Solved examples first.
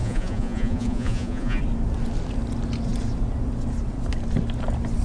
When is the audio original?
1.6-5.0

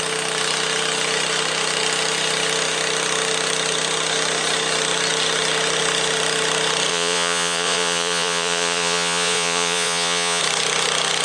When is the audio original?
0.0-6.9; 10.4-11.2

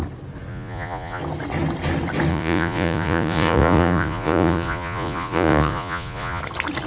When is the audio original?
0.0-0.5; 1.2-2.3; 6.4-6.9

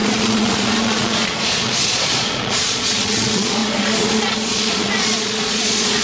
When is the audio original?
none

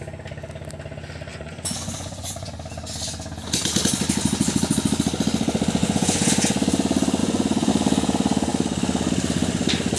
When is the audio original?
0.0-1.3; 2.5-5.8; 6.3-7.2; 7.7-10.0

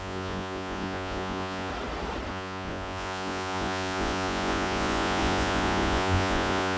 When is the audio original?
1.7-2.3

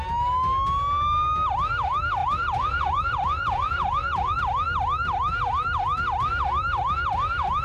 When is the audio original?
0.0-2.2; 4.4-7.6

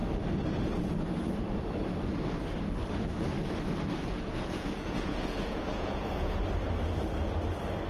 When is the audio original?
0.0-4.0; 6.4-7.9